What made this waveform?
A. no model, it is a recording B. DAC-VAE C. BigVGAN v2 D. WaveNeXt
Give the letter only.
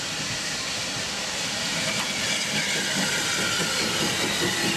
C